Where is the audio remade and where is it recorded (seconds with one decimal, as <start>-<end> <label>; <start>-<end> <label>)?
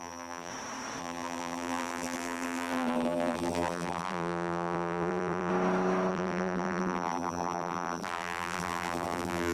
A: 0.0-0.5 remade; 0.5-1.0 recorded; 1.0-5.5 remade; 5.5-6.1 recorded; 6.1-9.5 remade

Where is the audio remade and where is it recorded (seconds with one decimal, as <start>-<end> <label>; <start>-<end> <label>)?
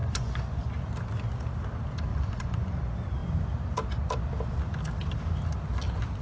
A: 0.0-0.8 remade; 0.8-2.1 recorded; 2.1-2.8 remade; 2.8-6.2 recorded